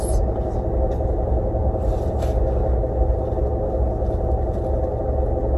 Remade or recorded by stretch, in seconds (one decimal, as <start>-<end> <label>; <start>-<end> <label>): 0.0-5.6 recorded